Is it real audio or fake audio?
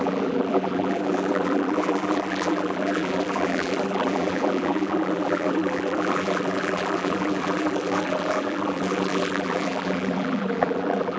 fake